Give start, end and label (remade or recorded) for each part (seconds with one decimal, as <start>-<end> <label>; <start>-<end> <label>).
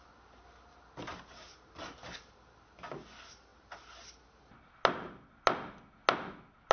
0.0-6.7 recorded